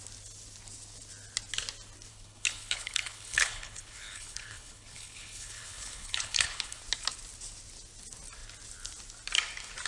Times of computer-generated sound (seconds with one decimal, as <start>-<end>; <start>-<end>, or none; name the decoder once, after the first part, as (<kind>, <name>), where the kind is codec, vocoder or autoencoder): 2.1-6.8 (codec, HILCodec)